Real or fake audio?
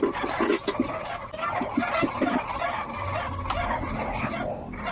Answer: real